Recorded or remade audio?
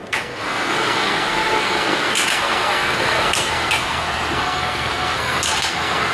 remade